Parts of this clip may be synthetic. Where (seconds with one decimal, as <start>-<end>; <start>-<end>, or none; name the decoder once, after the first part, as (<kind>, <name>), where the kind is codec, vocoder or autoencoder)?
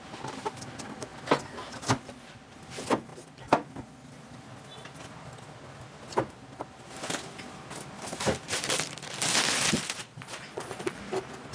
10.0-11.0 (vocoder, Vocos)